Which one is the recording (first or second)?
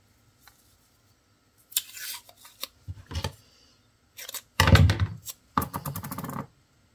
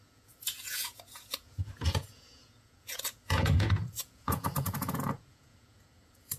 first